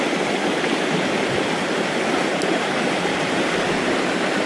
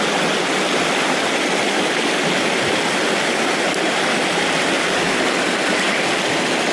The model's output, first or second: first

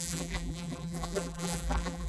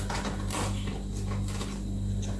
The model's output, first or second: first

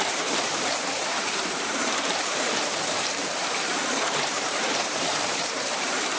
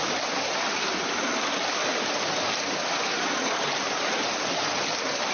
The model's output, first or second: first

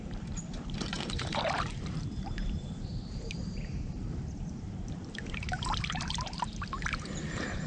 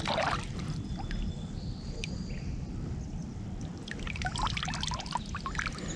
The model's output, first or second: first